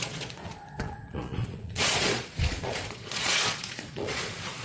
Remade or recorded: remade